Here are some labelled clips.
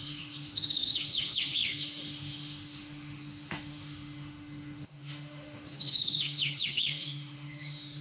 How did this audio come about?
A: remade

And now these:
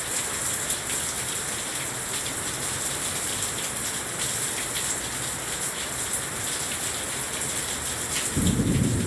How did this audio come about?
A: recorded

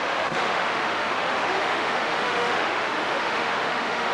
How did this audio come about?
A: remade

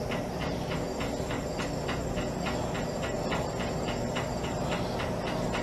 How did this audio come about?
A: recorded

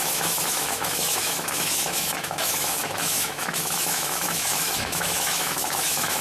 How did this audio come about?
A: remade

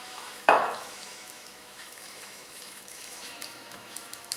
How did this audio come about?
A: remade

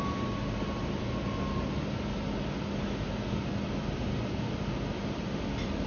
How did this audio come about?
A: recorded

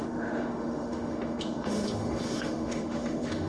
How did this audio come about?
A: remade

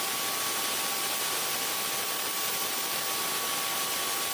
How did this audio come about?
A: recorded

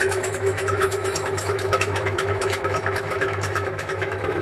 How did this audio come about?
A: remade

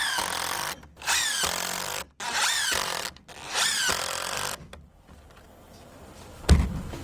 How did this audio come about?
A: recorded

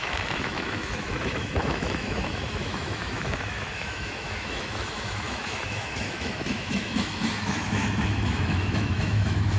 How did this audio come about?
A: remade